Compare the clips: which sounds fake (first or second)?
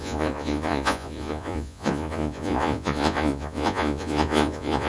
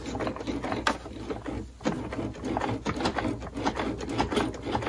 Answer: first